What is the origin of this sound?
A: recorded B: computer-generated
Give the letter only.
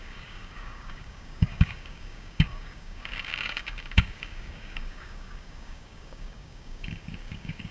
B